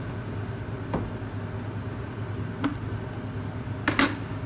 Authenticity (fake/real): real